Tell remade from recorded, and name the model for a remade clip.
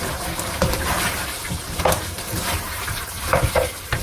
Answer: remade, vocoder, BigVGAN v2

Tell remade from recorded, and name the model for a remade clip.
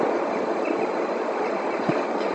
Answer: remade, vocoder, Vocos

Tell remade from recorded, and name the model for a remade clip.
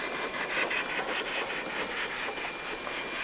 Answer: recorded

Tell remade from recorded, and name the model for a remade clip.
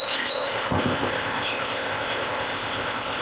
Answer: remade, codec, ZipCodec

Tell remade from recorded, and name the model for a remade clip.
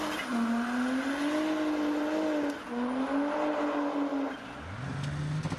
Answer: recorded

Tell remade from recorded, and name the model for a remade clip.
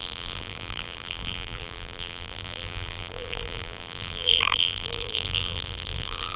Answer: remade, vocoder, BigVGAN v2